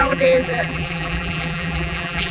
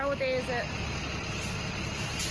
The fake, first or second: first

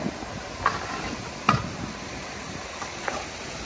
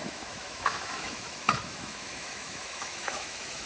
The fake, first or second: second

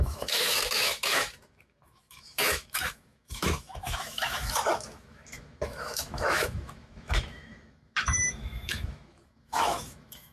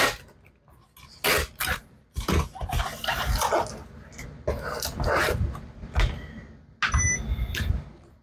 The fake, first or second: first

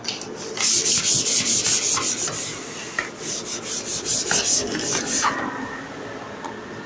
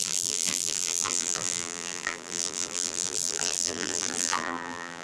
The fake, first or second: second